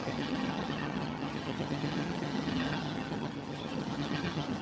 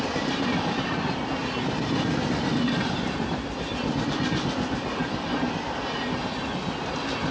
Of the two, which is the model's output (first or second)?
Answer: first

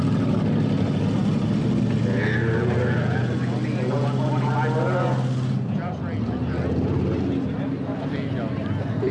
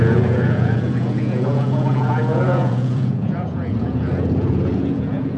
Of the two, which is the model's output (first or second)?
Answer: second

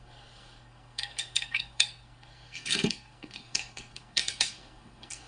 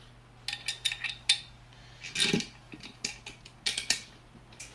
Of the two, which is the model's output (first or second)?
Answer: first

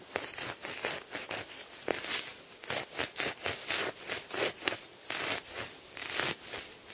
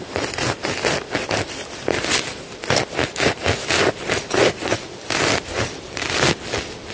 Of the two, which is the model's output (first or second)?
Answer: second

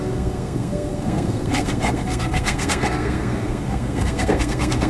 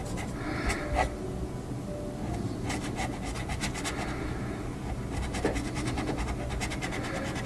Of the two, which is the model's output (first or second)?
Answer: first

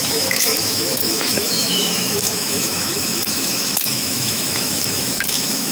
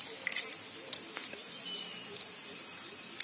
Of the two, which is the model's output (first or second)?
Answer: first